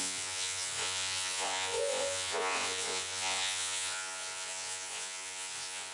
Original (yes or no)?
no